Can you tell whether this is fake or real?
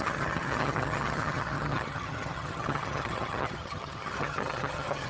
fake